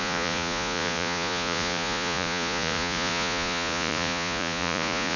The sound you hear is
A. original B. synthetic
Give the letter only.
B